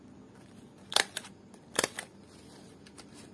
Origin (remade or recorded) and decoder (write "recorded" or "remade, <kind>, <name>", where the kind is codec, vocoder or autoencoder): recorded